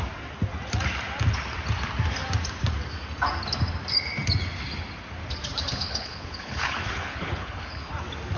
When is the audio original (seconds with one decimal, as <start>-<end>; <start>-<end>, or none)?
0.0-5.7; 7.9-8.4